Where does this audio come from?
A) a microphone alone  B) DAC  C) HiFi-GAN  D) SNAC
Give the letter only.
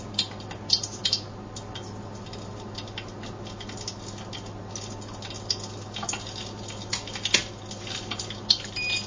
A